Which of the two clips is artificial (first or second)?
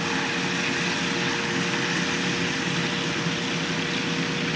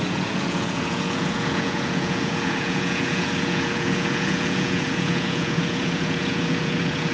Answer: second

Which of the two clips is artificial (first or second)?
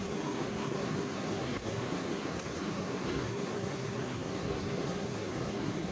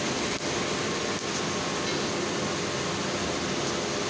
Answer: first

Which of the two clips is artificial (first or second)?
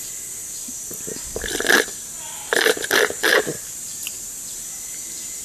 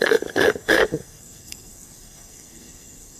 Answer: second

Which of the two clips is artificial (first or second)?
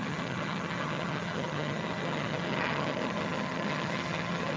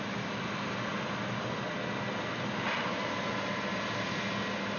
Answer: first